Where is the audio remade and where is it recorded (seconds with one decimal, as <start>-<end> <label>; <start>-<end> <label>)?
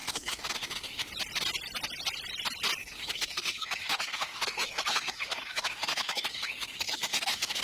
0.0-1.1 remade; 1.1-2.8 recorded; 2.8-7.6 remade